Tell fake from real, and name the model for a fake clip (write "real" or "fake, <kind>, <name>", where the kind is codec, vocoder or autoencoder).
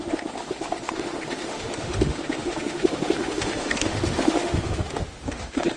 fake, autoencoder, DAC-VAE